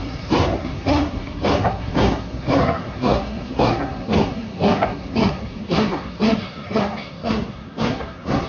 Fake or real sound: fake